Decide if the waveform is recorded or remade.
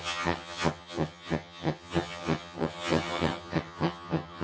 remade